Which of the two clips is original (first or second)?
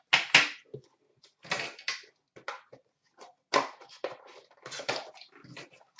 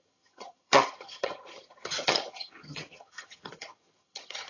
first